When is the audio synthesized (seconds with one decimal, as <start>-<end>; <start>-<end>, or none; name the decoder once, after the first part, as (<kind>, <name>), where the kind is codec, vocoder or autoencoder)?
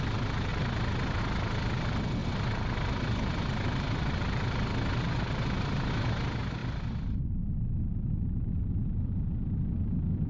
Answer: 0.5-1.2 (vocoder, BigVGAN v2); 2.2-5.9; 6.6-7.3